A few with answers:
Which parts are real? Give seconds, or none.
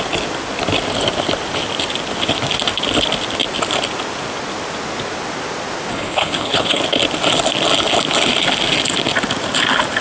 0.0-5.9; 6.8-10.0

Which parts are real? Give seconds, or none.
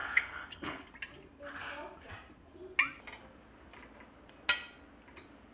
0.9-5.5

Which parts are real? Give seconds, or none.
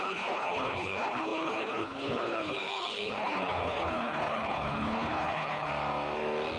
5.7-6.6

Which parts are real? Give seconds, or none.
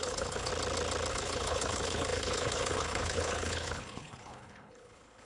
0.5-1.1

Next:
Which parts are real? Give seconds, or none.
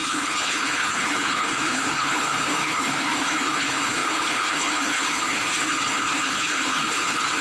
none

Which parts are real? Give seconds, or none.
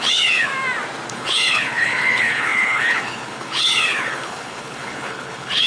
0.5-1.1